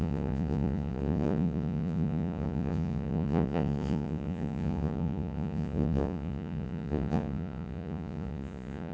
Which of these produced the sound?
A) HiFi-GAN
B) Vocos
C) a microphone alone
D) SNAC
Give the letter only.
B